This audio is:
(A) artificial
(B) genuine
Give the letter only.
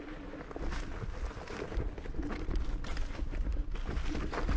B